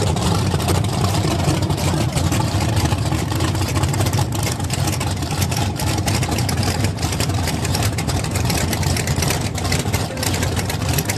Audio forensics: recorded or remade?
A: remade